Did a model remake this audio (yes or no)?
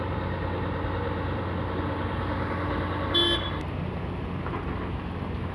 no